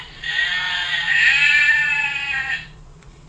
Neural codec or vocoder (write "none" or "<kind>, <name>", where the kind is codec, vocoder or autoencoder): vocoder, Vocos